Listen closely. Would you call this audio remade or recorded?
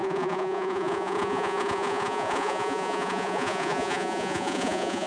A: remade